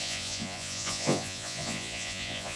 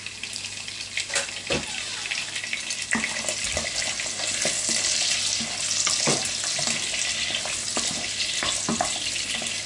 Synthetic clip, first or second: first